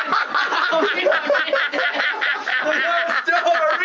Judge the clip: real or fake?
real